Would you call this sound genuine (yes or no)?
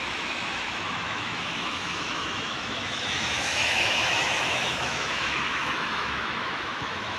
no